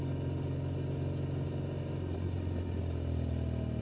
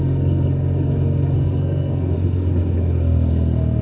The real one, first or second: first